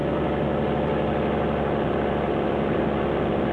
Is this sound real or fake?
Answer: real